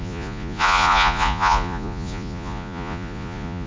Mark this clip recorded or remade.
remade